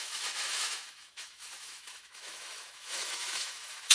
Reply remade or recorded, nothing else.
remade